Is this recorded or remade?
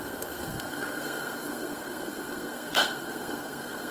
remade